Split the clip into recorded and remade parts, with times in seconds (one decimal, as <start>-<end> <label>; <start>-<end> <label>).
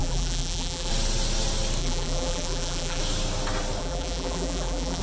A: 0.0-0.9 remade; 0.9-1.8 recorded; 1.8-3.0 remade; 3.0-3.8 recorded; 3.8-5.0 remade